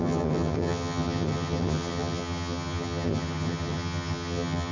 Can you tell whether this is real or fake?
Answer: fake